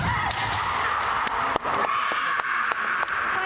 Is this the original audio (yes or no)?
yes